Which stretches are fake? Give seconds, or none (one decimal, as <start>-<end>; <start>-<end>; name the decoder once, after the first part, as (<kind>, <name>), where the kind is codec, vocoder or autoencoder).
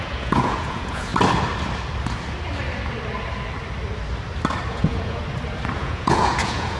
0.0-1.1 (vocoder, Vocos); 4.7-5.2; 5.8-6.8